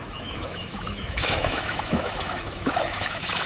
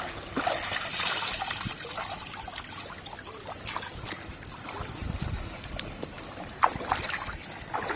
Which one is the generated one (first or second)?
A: first